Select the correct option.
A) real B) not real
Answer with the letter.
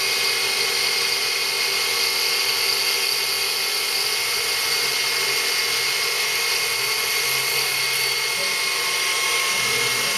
A